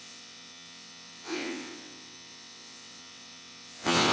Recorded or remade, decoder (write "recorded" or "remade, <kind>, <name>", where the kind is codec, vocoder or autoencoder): remade, vocoder, WaveNeXt